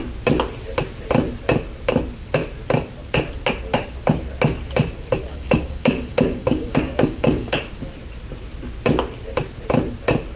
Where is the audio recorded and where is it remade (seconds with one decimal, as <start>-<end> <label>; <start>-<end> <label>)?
0.0-5.3 recorded; 5.3-7.6 remade; 7.6-10.4 recorded